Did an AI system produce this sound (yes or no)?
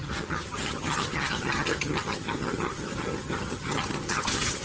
yes